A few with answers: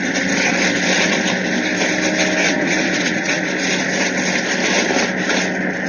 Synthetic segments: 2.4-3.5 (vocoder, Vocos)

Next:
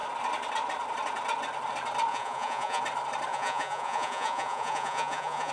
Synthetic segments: 2.1-2.8 (vocoder, Vocos); 3.3-5.5

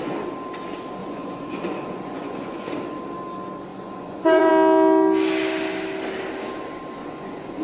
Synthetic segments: 1.0-2.7 (vocoder, Vocos); 3.7-4.5; 7.0-7.6

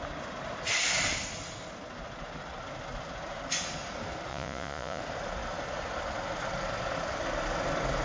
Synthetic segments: 4.3-5.0 (vocoder, Vocos)